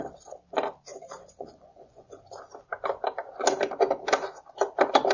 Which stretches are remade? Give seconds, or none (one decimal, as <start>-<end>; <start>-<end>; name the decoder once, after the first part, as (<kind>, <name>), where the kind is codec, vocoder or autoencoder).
0.9-2.1 (vocoder, Vocos)